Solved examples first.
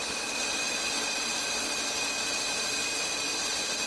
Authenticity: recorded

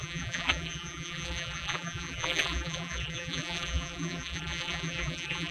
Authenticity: remade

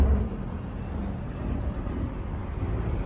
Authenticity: remade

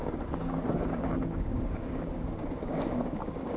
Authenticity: remade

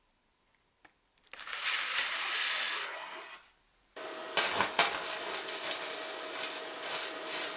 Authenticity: recorded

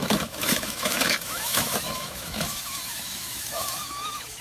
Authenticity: remade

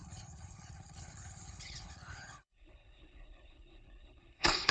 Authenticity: remade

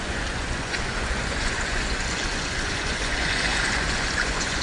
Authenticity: remade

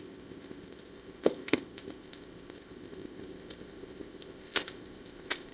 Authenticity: remade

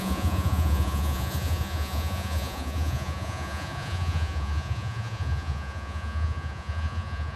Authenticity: remade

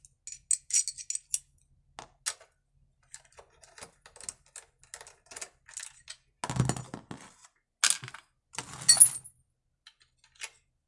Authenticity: recorded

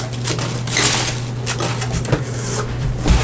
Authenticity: recorded